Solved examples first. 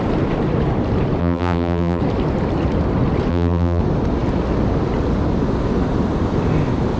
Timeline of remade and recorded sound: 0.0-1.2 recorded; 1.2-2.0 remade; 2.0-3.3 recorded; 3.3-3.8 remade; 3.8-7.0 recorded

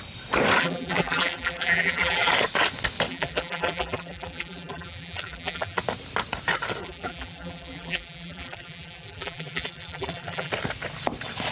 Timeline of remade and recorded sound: 0.0-0.6 recorded; 0.6-2.3 remade; 2.3-3.1 recorded; 3.1-5.8 remade; 5.8-6.8 recorded; 6.8-10.5 remade; 10.5-11.5 recorded

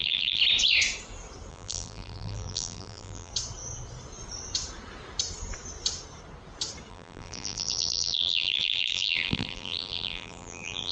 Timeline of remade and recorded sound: 0.0-0.4 remade; 0.4-1.5 recorded; 1.5-3.3 remade; 3.3-6.9 recorded; 6.9-10.9 remade

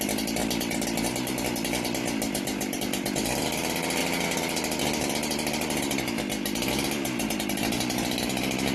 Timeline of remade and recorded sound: 0.0-8.7 recorded

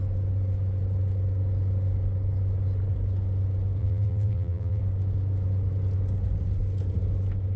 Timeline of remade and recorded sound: 0.0-3.8 recorded; 3.8-4.8 remade; 4.8-7.6 recorded

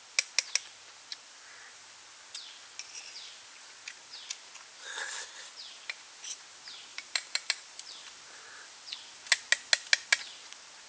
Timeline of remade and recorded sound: 0.0-6.9 recorded; 6.9-8.0 remade; 8.0-10.9 recorded

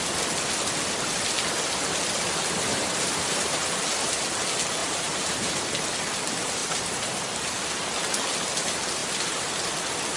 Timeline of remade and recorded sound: 0.0-2.7 recorded; 2.7-3.7 remade; 3.7-4.8 recorded; 4.8-5.7 remade; 5.7-6.6 recorded; 6.6-7.2 remade; 7.2-9.0 recorded; 9.0-9.5 remade; 9.5-10.2 recorded